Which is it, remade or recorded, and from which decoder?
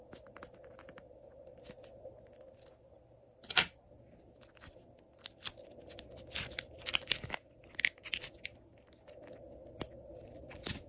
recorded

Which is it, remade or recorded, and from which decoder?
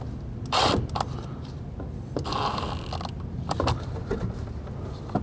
recorded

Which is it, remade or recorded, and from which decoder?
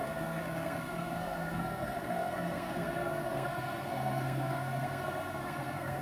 remade, codec, SNAC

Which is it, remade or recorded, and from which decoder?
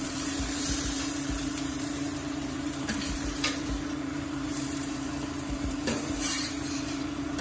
remade, vocoder, BigVGAN v2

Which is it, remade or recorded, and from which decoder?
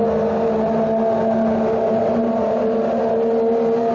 recorded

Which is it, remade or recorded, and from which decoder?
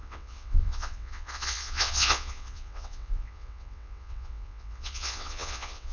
remade, vocoder, WaveNeXt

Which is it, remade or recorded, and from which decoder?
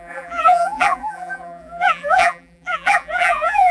remade, vocoder, BigVGAN v2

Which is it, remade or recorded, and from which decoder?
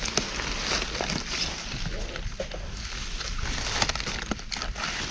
recorded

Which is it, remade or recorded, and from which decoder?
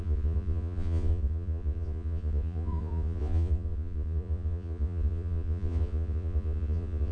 remade, vocoder, Vocos